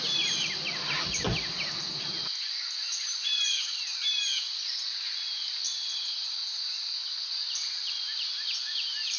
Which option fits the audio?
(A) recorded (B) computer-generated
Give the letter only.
A